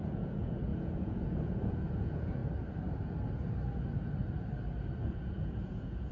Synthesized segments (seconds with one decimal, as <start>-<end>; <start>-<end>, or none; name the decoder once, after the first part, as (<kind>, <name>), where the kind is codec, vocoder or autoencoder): 0.0-2.4 (vocoder, Vocos); 5.0-6.1